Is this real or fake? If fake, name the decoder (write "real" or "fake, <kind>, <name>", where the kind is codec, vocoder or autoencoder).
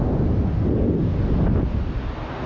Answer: real